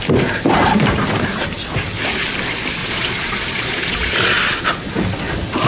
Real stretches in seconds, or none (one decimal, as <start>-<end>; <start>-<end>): 0.0-2.8; 4.6-5.7